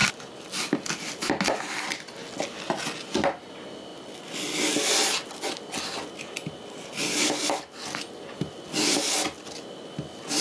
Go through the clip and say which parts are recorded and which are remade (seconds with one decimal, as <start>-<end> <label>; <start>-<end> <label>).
0.0-10.4 recorded